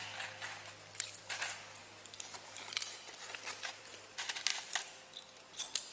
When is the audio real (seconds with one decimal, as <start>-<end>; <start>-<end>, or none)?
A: 0.0-5.9